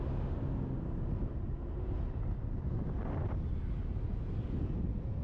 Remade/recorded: recorded